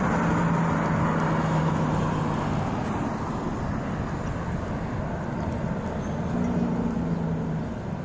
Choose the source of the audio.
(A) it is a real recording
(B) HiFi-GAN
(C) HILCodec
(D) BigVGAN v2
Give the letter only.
A